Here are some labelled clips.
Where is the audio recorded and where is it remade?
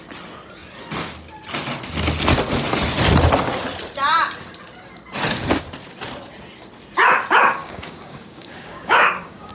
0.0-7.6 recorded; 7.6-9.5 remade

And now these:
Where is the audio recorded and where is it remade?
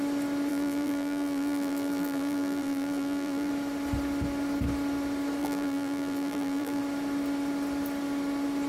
0.0-0.5 recorded; 0.5-3.5 remade; 3.5-5.4 recorded; 5.4-6.8 remade; 6.8-8.7 recorded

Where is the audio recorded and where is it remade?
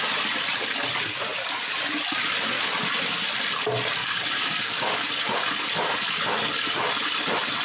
0.0-4.0 recorded; 4.0-5.0 remade; 5.0-7.6 recorded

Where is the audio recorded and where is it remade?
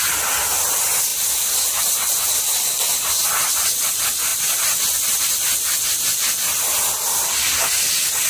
0.0-8.3 recorded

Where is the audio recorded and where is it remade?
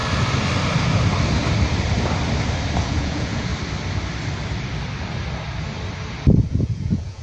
0.0-2.8 recorded; 2.8-3.5 remade; 3.5-6.5 recorded; 6.5-7.2 remade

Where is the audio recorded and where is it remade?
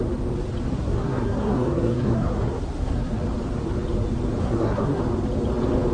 0.0-0.7 recorded; 0.7-3.1 remade; 3.1-4.4 recorded; 4.4-5.0 remade; 5.0-5.9 recorded